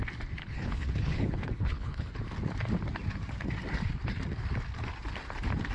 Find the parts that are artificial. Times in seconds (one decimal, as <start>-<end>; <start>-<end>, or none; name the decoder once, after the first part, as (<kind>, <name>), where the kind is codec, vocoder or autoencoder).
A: 0.4-2.1 (codec, HILCodec)